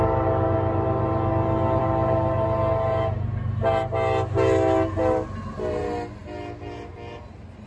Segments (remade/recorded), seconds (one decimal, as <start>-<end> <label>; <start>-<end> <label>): 0.0-7.7 recorded